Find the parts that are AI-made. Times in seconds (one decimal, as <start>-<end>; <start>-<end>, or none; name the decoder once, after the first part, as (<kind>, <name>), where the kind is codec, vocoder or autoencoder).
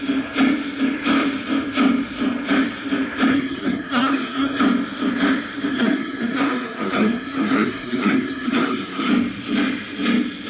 3.3-4.6 (codec, SNAC); 5.7-9.1